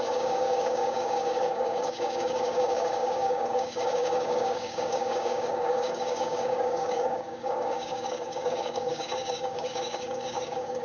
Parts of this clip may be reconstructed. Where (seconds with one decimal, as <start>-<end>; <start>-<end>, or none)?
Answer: 0.0-10.8

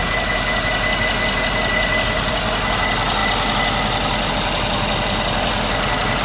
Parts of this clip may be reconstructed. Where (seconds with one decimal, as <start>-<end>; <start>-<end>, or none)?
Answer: none

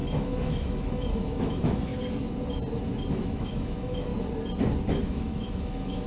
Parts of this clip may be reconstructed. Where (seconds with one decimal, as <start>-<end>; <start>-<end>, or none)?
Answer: 0.0-1.9; 3.1-4.1; 4.9-6.1

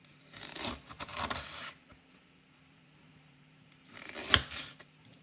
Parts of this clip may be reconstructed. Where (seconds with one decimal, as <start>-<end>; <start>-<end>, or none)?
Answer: 0.0-1.1; 2.1-5.2

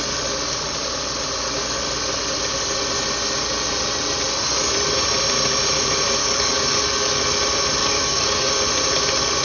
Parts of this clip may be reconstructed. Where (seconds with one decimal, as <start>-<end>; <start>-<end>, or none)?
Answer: 6.2-7.2; 7.8-8.5

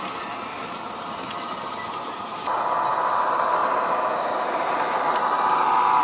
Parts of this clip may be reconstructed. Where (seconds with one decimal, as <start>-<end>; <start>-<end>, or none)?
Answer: 3.6-4.7